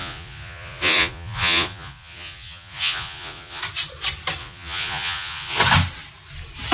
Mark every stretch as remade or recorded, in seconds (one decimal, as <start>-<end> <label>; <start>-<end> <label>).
0.0-3.6 remade; 3.6-4.4 recorded; 4.4-5.6 remade; 5.6-6.7 recorded